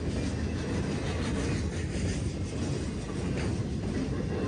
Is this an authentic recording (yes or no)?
yes